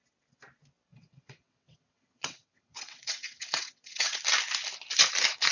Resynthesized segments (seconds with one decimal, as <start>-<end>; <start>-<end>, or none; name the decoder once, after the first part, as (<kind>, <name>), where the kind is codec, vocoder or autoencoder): 0.9-4.2 (vocoder, WaveNeXt)